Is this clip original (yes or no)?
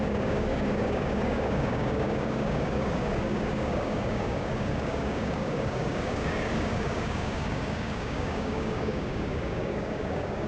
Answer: no